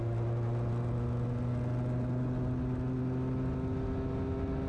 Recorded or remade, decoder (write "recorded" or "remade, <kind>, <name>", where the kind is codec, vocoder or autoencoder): recorded